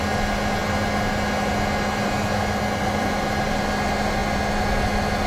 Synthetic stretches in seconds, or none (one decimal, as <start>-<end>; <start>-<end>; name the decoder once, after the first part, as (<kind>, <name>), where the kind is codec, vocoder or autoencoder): none